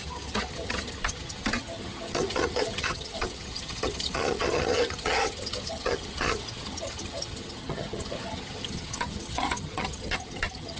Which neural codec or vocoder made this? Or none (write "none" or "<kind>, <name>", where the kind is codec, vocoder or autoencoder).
vocoder, HiFi-GAN